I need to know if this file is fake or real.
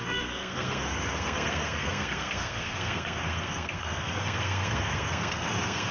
fake